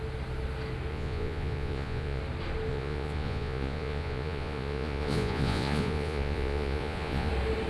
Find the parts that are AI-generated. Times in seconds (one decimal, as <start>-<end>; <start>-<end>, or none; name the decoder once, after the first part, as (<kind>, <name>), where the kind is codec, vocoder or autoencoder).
0.9-2.2 (vocoder, Vocos); 2.7-7.3